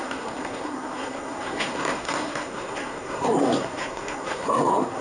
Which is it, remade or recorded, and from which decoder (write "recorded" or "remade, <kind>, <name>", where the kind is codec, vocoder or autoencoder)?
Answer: remade, codec, SNAC